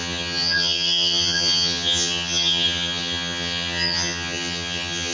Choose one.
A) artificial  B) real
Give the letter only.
A